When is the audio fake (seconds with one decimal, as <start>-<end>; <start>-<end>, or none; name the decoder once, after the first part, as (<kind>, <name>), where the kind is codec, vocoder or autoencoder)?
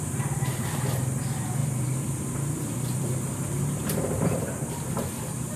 1.6-4.4 (vocoder, BigVGAN v2)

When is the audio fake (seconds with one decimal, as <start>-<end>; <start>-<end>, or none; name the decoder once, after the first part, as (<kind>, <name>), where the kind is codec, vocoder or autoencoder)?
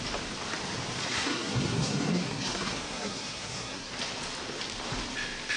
1.0-3.9 (codec, SNAC)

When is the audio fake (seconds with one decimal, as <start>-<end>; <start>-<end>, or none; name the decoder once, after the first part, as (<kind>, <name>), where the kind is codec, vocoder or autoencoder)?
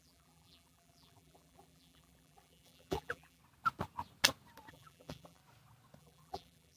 0.0-3.4 (vocoder, BigVGAN v2); 4.7-5.4; 6.0-6.8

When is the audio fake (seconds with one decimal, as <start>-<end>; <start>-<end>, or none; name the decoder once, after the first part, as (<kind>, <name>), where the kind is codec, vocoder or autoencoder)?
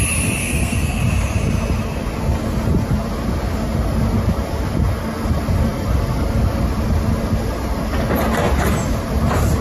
0.4-1.0 (codec, SNAC)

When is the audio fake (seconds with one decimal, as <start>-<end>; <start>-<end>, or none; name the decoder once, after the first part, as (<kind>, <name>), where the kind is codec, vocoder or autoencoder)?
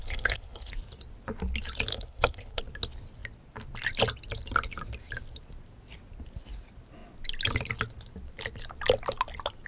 0.0-0.7 (codec, HILCodec); 1.9-2.6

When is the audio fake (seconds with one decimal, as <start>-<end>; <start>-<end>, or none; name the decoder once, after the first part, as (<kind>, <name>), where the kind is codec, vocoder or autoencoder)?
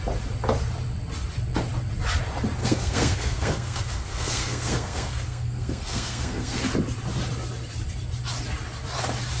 2.6-6.6 (codec, SNAC)